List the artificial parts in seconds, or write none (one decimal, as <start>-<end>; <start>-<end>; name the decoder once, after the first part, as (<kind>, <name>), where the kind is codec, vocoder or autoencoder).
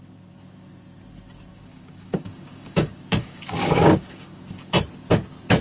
1.5-4.7 (codec, DAC)